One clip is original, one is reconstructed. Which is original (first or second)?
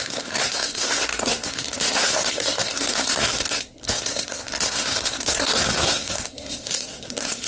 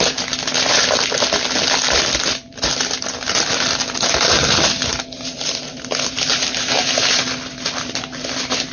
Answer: second